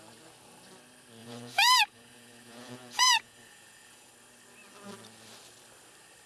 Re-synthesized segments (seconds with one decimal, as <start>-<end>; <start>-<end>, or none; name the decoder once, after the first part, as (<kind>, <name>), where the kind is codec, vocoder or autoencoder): 1.2-4.1 (vocoder, Vocos)